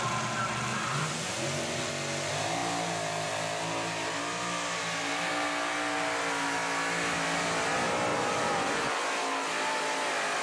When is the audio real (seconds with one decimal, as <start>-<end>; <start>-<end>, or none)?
0.0-0.7; 1.9-8.1; 9.0-10.4